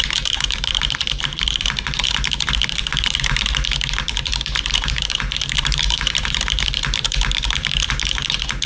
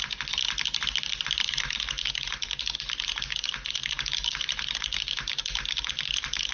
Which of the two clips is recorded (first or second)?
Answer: second